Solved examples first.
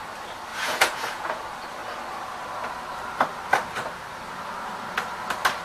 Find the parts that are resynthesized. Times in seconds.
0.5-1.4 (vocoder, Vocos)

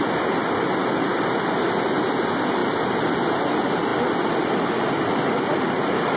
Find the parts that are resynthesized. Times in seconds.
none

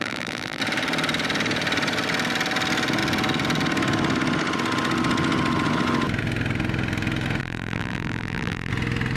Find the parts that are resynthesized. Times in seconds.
0.0-0.6 (vocoder, BigVGAN v2); 7.4-8.7

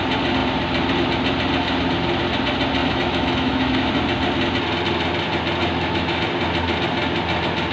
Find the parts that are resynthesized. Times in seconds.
2.8-3.9 (autoencoder, DAC-VAE); 5.6-6.2

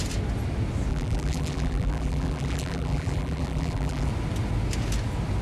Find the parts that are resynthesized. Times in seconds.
0.9-4.1 (vocoder, BigVGAN v2)